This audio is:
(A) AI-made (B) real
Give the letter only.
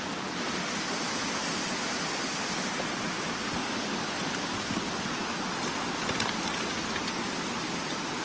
B